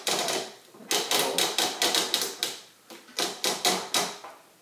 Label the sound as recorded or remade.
recorded